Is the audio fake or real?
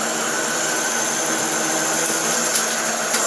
real